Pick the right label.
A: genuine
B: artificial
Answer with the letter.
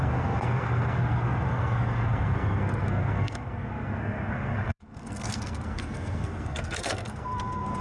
B